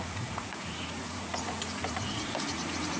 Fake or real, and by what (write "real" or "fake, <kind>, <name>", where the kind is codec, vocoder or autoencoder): fake, vocoder, Vocos